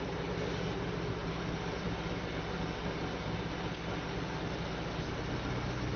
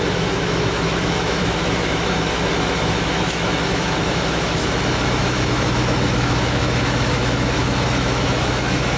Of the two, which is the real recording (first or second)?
first